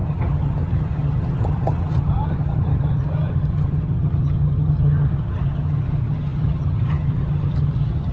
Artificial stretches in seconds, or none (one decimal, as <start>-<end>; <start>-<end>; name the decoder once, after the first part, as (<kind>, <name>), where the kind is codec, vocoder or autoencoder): 0.0-8.1 (vocoder, HiFi-GAN)